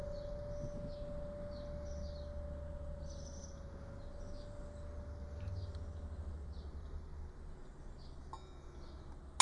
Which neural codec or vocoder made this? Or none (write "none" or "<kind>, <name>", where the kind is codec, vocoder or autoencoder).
none